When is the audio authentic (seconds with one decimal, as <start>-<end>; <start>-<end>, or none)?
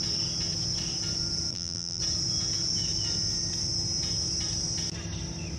0.0-1.5; 2.0-5.6